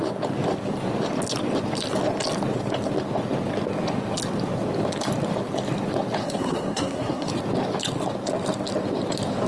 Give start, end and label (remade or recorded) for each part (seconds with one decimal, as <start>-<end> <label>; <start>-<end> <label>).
0.0-6.2 recorded; 6.2-7.3 remade; 7.3-9.5 recorded